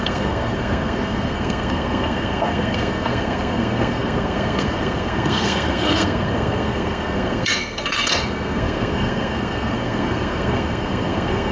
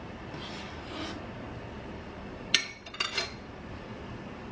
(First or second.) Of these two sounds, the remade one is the first